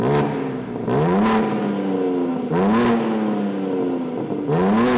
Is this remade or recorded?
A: recorded